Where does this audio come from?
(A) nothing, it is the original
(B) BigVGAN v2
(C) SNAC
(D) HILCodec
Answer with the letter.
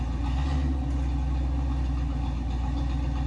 A